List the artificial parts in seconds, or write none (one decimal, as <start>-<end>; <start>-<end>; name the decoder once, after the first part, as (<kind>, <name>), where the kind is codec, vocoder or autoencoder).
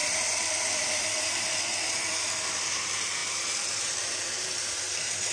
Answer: 0.0-5.3 (vocoder, BigVGAN v2)